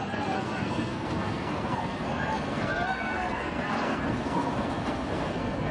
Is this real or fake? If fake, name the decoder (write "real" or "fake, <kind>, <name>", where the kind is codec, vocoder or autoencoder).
fake, codec, SNAC